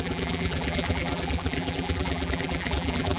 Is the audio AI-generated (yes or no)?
yes